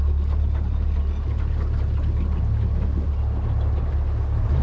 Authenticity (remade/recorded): recorded